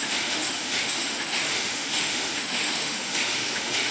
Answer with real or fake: fake